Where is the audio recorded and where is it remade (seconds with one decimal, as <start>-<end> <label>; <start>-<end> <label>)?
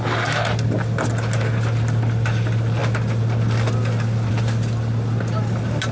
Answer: 0.0-5.9 recorded